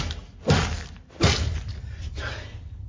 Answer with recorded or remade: recorded